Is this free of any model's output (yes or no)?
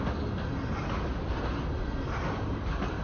yes